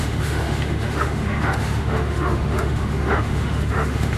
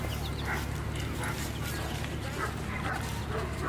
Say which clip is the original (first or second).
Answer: second